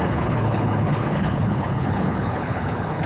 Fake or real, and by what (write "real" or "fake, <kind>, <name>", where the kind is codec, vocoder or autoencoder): fake, codec, HILCodec